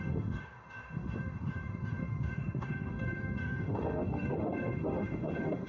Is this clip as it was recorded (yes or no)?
no